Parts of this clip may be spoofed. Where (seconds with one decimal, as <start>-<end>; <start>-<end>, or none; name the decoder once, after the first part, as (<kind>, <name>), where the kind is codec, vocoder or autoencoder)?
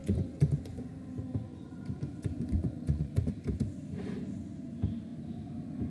0.0-0.9 (vocoder, Vocos); 1.4-3.3